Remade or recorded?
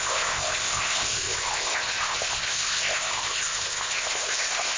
remade